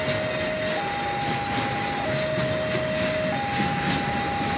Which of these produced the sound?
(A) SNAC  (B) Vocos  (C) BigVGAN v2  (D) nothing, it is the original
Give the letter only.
D